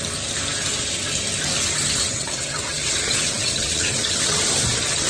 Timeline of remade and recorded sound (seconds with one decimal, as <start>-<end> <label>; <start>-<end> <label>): 0.0-2.0 recorded; 2.0-4.4 remade; 4.4-5.1 recorded